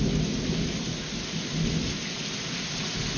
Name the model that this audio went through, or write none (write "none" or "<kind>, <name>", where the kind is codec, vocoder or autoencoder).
none